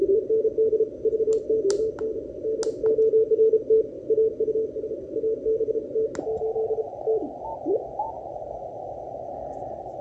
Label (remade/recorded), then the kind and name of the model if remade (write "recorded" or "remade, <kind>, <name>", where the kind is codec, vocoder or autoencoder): recorded